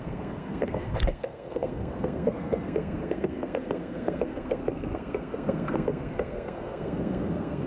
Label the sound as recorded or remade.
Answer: remade